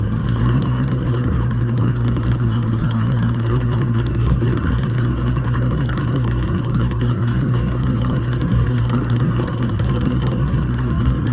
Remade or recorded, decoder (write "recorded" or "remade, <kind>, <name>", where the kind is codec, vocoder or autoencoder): remade, codec, SNAC